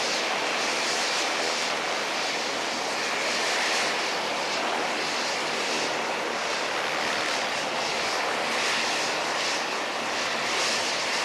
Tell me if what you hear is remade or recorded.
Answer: recorded